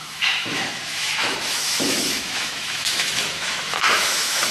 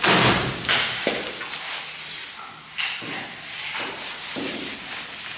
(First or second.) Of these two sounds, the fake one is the first